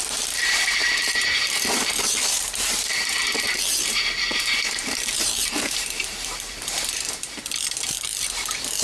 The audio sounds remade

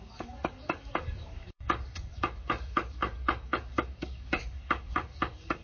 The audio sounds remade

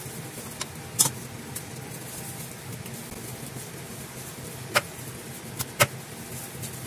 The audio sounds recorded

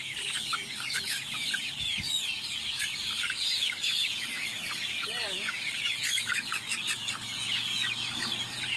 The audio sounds remade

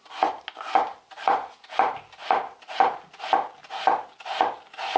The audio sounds recorded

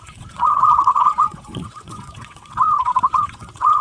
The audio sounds remade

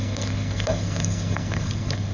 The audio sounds remade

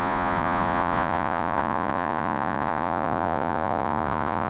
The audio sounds remade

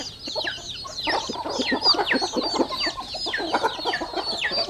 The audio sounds recorded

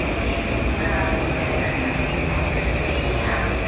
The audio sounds recorded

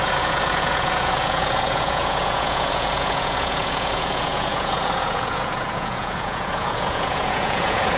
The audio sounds remade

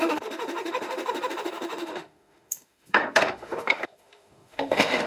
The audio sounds remade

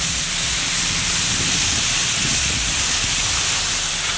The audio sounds remade